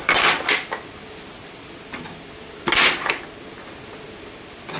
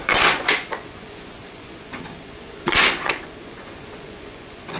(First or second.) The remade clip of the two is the second